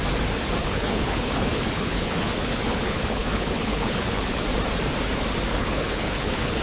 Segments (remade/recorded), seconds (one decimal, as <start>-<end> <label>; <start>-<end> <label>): 0.0-0.6 recorded; 0.6-4.4 remade; 4.4-5.5 recorded; 5.5-6.6 remade